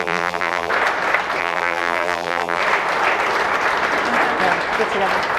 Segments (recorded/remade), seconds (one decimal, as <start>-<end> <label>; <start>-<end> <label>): 0.0-0.7 remade; 0.7-1.4 recorded; 1.4-2.6 remade; 2.6-5.4 recorded